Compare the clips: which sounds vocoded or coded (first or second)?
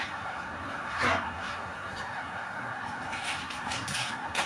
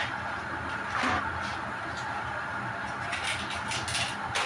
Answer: first